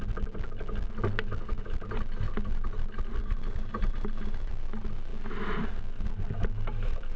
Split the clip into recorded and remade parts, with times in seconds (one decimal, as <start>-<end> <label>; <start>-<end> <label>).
0.0-3.2 recorded; 3.2-4.5 remade; 4.5-7.2 recorded